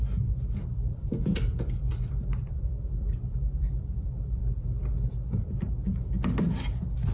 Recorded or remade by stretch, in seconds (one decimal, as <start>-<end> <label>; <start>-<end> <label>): 0.0-4.4 remade; 4.4-7.1 recorded